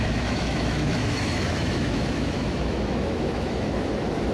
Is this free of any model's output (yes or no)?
no